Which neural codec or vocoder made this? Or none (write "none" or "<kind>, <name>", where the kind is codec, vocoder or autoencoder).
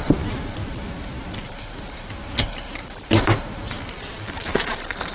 none